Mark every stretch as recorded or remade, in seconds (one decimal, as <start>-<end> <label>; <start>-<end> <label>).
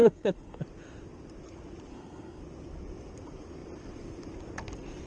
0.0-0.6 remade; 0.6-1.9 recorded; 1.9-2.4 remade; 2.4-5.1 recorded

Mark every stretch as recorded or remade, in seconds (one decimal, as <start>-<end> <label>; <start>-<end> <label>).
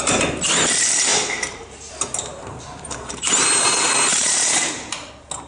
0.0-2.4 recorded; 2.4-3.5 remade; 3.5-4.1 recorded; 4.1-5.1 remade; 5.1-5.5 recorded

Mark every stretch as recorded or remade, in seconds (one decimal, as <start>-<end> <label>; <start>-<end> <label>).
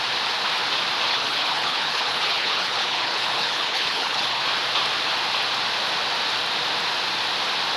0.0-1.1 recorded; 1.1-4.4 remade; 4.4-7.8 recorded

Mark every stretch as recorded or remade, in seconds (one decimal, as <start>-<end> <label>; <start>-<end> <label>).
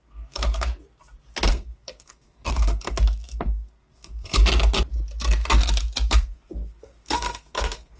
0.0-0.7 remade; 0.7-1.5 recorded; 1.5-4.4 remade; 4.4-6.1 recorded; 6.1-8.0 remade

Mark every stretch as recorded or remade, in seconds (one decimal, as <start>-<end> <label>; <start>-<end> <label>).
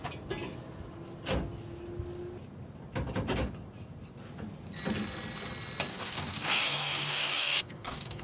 0.0-5.9 recorded; 5.9-8.2 remade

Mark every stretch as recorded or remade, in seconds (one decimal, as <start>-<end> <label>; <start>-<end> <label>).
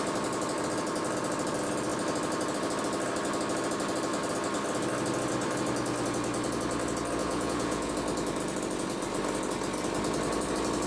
0.0-7.2 recorded; 7.2-7.9 remade; 7.9-10.9 recorded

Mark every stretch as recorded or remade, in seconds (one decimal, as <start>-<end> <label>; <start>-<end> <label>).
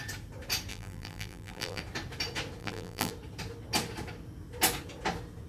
0.0-0.7 recorded; 0.7-1.8 remade; 1.8-2.6 recorded; 2.6-3.1 remade; 3.1-5.5 recorded